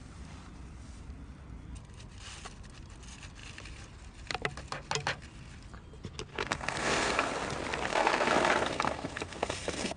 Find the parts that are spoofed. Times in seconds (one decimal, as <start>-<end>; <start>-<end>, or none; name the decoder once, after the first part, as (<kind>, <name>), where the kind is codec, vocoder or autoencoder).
6.3-7.3 (codec, SNAC); 7.9-10.0